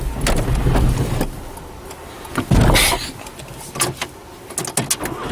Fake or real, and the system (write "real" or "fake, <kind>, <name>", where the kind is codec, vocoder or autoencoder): real